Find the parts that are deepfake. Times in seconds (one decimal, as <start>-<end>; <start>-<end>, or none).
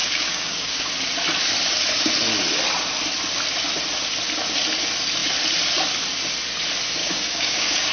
0.0-0.9; 7.0-7.9